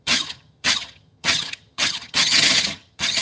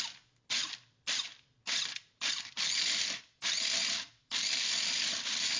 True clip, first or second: second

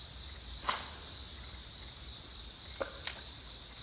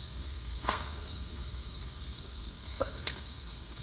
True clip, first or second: first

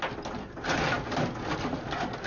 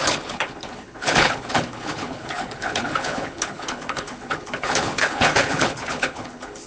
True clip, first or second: first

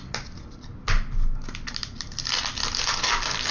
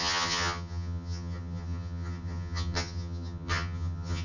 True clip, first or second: first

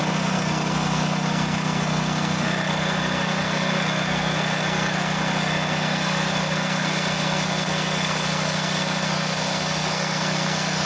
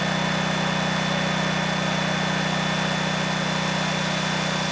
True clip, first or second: second